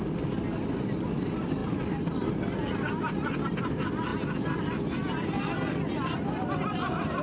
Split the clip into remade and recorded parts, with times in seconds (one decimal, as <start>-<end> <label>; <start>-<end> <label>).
0.0-7.2 recorded